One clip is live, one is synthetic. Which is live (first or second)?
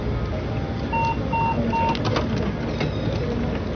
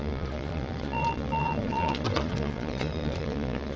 first